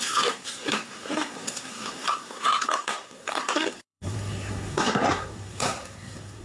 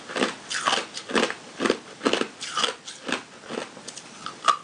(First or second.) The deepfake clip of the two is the first